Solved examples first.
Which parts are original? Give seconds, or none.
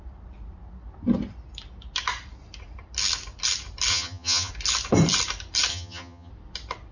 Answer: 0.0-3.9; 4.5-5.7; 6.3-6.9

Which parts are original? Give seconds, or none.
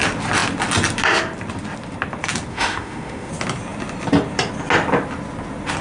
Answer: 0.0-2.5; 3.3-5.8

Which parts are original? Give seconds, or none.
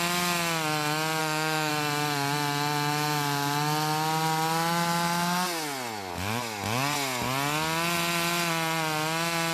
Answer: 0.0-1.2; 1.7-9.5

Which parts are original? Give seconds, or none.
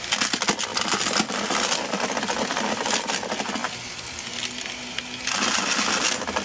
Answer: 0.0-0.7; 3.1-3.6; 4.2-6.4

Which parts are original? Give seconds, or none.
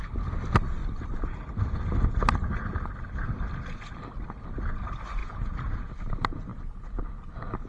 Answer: 0.0-5.2; 5.9-7.7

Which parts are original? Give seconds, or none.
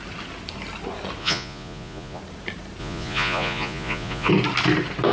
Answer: 0.0-1.2; 2.2-2.8; 4.3-5.1